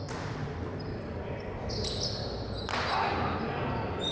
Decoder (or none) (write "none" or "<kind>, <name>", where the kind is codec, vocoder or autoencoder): none